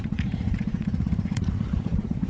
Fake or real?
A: fake